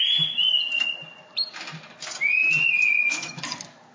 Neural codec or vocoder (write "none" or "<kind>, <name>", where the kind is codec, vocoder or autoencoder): none